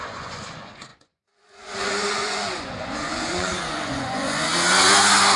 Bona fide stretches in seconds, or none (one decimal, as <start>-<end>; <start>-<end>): 4.4-5.4